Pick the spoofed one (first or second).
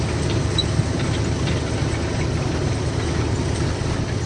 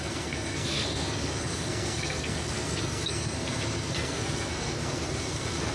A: second